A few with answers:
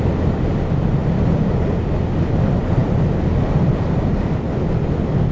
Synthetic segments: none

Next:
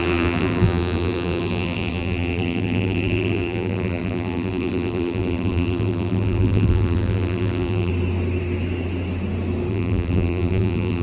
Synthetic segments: 0.0-7.9 (vocoder, BigVGAN v2); 9.7-11.0

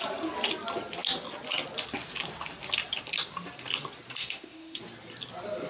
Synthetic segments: 4.2-4.8 (autoencoder, DAC-VAE)

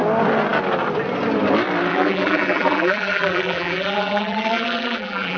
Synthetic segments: 1.9-5.4 (vocoder, BigVGAN v2)

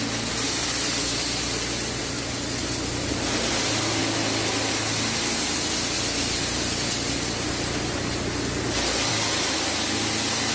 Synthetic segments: none

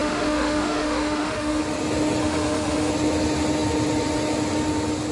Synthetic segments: 0.0-1.6 (autoencoder, DAC-VAE); 2.2-2.9

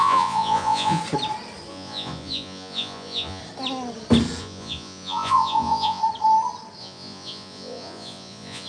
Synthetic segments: 0.0-1.0 (vocoder, Vocos); 1.7-3.4; 4.4-6.0; 6.8-8.7